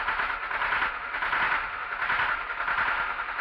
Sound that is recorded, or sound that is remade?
recorded